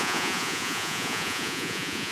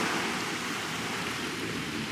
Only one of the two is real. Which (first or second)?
second